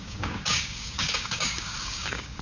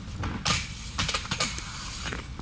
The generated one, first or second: first